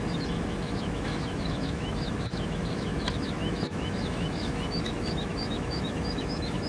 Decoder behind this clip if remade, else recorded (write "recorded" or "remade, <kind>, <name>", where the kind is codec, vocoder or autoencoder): remade, autoencoder, DAC-VAE